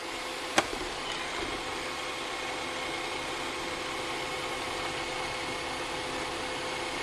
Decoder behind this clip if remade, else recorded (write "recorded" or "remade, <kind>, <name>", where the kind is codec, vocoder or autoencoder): recorded